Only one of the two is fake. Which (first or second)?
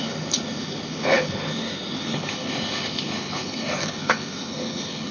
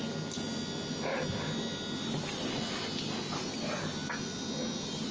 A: first